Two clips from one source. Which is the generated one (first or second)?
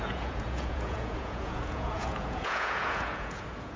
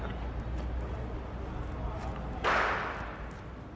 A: first